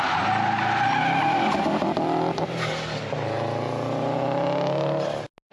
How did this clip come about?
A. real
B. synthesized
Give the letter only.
A